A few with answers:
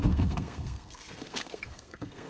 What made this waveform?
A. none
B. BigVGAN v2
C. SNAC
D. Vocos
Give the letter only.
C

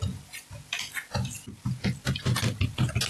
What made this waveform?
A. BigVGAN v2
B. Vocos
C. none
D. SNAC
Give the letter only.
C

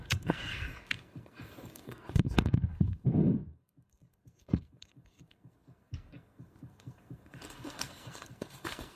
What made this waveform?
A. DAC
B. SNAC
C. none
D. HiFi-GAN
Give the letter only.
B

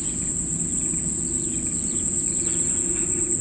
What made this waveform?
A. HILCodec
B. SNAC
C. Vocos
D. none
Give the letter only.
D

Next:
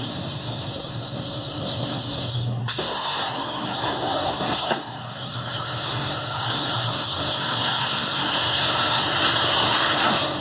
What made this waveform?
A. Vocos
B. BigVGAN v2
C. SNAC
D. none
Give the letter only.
C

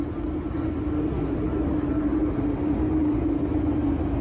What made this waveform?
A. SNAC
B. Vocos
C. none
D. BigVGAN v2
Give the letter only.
C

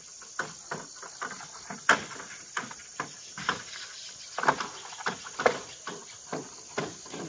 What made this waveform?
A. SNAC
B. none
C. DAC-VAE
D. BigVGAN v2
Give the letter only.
B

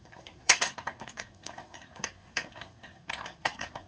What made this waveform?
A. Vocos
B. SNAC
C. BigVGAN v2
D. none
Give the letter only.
B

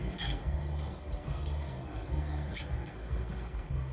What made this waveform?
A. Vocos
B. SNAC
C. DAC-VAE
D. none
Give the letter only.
B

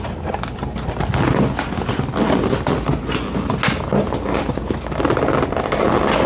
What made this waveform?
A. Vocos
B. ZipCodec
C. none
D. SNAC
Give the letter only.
C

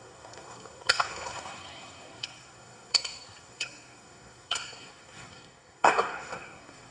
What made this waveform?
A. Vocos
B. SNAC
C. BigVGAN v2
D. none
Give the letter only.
B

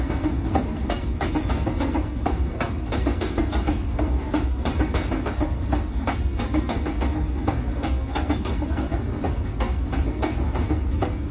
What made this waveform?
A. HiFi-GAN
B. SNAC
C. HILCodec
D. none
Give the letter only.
B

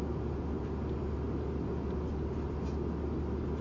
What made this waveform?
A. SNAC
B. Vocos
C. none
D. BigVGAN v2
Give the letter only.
C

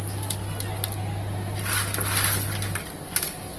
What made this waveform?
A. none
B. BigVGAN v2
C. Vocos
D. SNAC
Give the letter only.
A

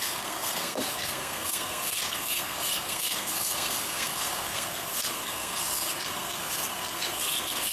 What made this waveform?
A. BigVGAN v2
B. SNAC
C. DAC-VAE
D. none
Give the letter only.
B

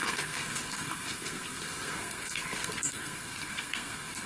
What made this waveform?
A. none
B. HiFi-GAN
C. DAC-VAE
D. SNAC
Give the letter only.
D